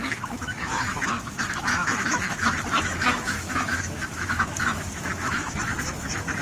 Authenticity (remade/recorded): remade